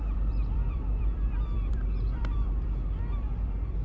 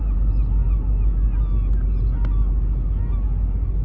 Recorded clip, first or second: second